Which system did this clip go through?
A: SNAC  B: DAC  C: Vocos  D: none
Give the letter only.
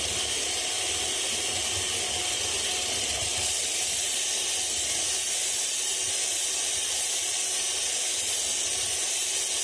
D